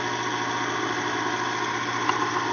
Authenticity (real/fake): real